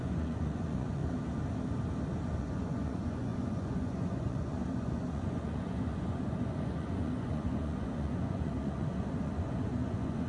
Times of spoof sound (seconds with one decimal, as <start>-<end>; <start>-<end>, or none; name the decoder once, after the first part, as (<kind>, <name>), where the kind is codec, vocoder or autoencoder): 0.0-1.0 (vocoder, Vocos); 2.4-10.3